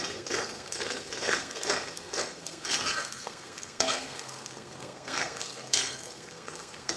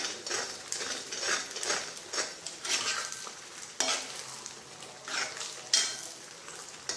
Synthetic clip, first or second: first